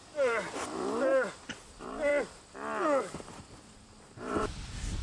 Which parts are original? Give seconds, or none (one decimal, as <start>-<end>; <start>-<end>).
1.1-1.7; 2.1-3.0